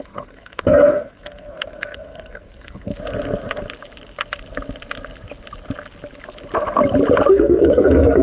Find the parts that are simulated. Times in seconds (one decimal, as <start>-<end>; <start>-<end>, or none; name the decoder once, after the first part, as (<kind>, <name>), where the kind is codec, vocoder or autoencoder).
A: 0.0-2.9 (codec, SNAC); 7.3-8.2